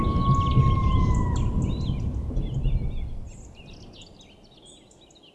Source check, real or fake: real